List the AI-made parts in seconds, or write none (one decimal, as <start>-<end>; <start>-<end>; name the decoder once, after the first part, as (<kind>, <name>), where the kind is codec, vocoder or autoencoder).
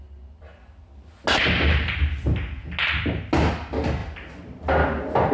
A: none